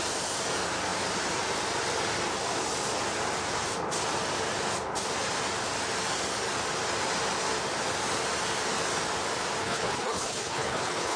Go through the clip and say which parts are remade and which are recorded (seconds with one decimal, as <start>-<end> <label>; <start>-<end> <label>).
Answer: 0.0-9.6 recorded; 9.6-11.2 remade

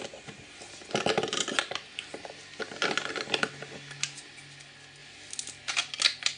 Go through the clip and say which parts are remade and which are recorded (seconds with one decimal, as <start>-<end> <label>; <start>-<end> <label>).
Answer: 0.0-6.4 recorded